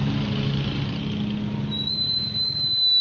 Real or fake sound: real